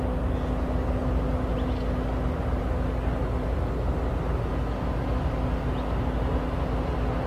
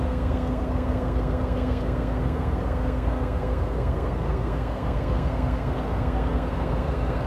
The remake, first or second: second